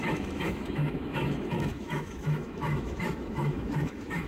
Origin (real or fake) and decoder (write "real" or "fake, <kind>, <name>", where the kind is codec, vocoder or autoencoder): fake, autoencoder, DAC-VAE